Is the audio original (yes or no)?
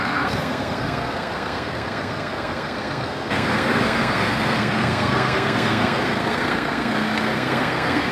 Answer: no